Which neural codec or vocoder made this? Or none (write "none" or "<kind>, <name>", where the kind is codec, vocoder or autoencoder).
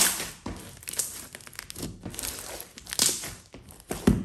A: none